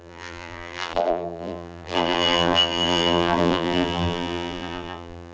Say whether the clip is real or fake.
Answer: fake